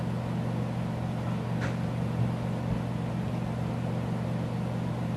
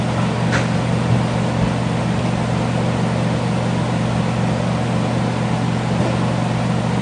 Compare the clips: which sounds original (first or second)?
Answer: first